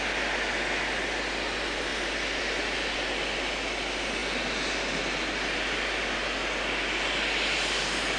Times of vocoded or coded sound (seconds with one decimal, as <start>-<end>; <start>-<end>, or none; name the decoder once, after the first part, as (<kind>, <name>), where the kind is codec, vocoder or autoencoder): none